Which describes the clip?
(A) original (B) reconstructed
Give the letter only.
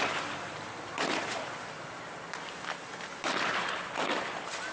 B